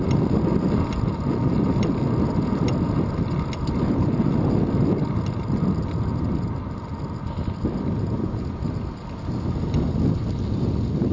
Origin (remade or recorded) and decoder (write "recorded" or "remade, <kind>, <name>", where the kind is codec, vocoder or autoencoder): recorded